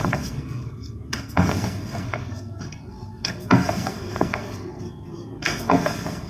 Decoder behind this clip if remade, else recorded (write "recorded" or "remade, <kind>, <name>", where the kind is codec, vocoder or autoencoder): remade, codec, SNAC